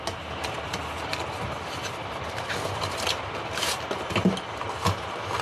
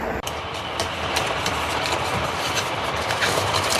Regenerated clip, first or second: second